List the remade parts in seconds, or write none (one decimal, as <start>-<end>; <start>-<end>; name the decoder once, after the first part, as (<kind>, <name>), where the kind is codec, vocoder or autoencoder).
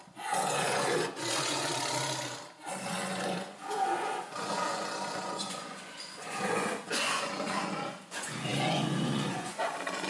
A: 0.0-1.7 (vocoder, Vocos); 2.9-10.1